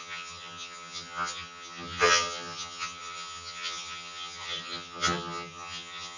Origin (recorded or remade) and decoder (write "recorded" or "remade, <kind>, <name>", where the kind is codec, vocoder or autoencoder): remade, vocoder, HiFi-GAN